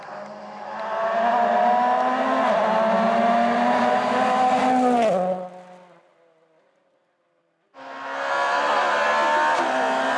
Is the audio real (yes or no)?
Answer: yes